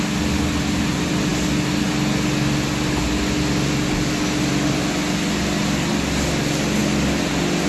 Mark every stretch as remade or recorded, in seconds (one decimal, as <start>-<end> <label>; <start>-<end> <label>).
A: 0.0-7.7 recorded